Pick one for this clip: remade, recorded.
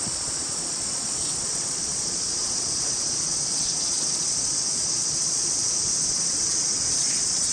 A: remade